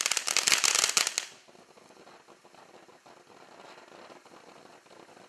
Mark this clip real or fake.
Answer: real